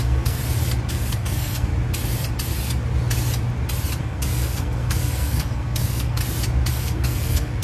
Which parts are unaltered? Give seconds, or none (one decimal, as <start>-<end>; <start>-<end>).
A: 0.4-0.9; 1.7-4.0; 6.2-6.7